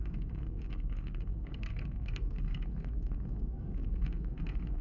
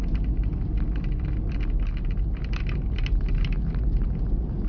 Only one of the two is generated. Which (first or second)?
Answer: first